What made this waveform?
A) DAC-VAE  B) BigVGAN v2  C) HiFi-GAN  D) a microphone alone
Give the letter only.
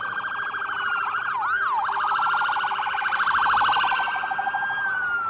B